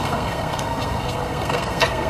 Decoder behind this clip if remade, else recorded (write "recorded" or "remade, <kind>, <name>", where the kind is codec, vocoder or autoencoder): remade, codec, SNAC